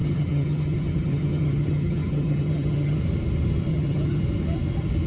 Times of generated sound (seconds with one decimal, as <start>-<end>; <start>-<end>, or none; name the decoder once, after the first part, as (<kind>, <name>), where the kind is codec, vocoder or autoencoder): 0.0-3.0 (vocoder, HiFi-GAN); 3.7-4.2